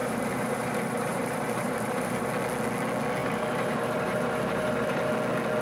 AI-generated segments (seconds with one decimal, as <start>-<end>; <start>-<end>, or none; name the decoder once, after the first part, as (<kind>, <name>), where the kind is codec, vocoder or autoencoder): 0.0-2.3 (vocoder, BigVGAN v2); 3.2-5.1